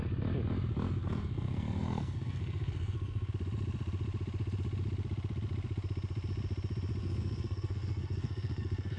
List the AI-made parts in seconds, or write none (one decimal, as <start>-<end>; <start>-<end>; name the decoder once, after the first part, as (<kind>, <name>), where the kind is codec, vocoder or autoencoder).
1.0-3.3 (codec, SNAC); 7.0-9.0

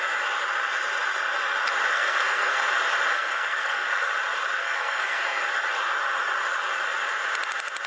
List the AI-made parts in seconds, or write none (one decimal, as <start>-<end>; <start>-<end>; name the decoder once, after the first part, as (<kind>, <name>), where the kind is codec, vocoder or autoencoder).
1.9-2.6 (codec, SNAC); 3.1-4.1; 4.6-5.4

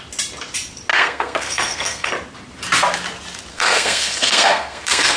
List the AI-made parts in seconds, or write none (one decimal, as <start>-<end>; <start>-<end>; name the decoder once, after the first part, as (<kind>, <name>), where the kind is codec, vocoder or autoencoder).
0.9-2.1 (codec, SNAC); 3.5-5.2

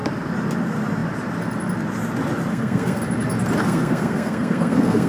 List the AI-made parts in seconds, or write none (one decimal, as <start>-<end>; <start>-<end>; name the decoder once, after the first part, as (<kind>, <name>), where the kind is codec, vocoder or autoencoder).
2.5-3.0 (codec, SNAC); 3.6-5.1

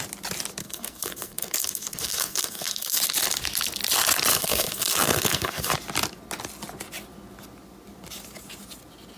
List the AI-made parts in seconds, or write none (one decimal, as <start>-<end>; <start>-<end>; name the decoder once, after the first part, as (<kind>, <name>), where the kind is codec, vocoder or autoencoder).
0.6-3.0 (codec, SNAC); 4.3-5.7